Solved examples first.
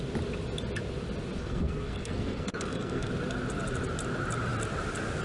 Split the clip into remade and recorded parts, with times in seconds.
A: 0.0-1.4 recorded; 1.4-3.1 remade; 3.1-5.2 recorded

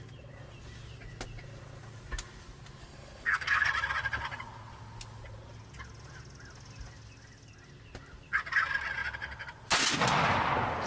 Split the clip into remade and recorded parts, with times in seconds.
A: 0.0-2.8 recorded; 2.8-3.7 remade; 3.7-10.9 recorded

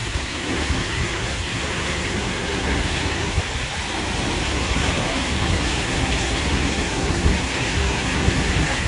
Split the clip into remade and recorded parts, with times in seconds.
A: 0.0-3.4 remade; 3.4-4.4 recorded; 4.4-8.9 remade

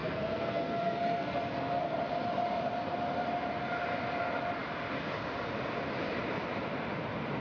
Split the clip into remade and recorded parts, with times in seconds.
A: 0.0-1.8 remade; 1.8-7.4 recorded